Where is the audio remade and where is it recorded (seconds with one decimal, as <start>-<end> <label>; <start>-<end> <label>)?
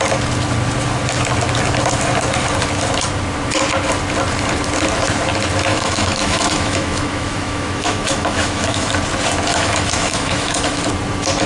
0.0-5.7 recorded; 5.7-8.9 remade; 8.9-9.5 recorded; 9.5-10.8 remade; 10.8-11.5 recorded